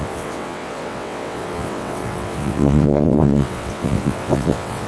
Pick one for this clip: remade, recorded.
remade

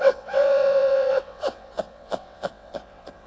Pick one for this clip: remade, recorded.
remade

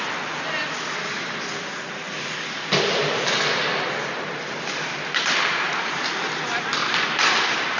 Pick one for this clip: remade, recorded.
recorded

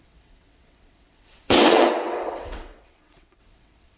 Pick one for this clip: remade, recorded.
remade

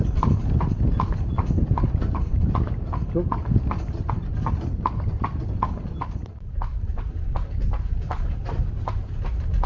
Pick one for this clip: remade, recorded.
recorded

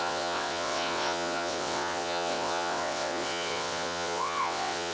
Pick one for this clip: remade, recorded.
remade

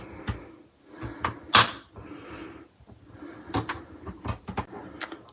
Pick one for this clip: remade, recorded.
recorded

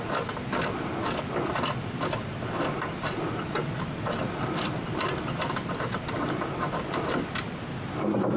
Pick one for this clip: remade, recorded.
recorded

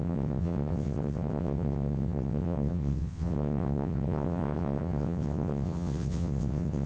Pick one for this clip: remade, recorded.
remade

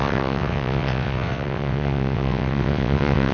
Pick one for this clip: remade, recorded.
remade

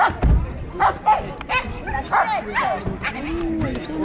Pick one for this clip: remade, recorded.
recorded